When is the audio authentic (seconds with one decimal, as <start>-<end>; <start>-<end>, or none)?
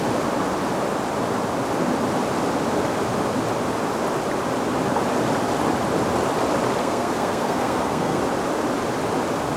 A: 0.0-6.8; 8.2-9.6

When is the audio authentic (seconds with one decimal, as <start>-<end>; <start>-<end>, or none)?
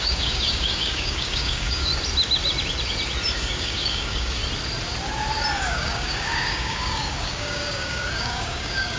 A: 1.9-3.3; 4.4-5.5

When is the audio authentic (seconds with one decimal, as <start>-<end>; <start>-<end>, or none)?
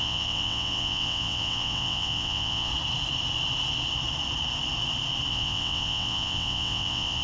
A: 2.7-5.3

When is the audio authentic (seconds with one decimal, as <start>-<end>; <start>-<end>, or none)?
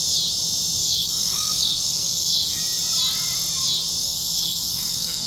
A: 0.0-0.8; 2.6-4.0